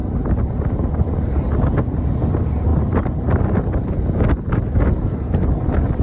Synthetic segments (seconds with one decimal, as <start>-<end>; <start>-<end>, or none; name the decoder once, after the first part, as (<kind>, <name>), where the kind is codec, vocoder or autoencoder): none